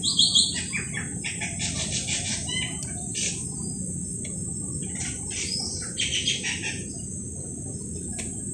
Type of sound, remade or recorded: remade